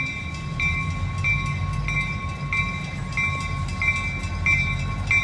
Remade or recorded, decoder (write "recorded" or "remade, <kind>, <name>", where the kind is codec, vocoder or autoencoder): recorded